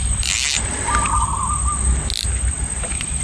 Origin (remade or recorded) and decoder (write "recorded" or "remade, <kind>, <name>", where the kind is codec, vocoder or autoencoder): recorded